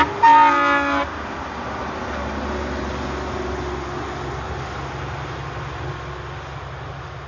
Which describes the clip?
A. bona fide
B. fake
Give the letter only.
A